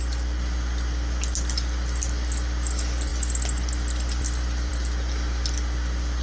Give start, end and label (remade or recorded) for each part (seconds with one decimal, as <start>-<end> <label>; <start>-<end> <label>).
0.0-6.2 recorded

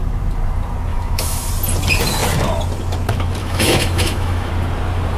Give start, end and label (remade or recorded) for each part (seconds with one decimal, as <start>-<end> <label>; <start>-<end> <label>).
0.0-0.9 recorded; 0.9-1.5 remade; 1.5-3.4 recorded; 3.4-4.5 remade; 4.5-5.2 recorded

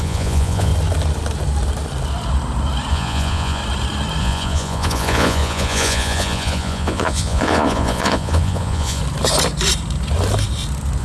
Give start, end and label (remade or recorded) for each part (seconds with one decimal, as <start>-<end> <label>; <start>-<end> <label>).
0.0-0.7 remade; 0.7-2.9 recorded; 2.9-3.6 remade; 3.6-4.2 recorded; 4.2-9.0 remade; 9.0-11.0 recorded

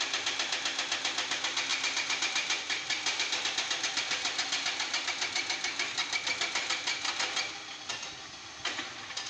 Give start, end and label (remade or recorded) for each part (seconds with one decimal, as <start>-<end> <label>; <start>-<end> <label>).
0.0-9.3 recorded

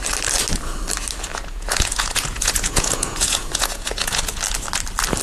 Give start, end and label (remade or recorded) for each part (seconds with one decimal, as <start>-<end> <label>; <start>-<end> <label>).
0.0-1.3 recorded; 1.3-4.4 remade; 4.4-5.2 recorded